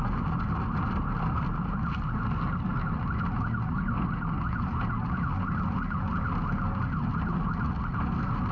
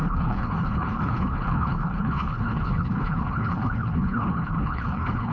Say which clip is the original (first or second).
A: first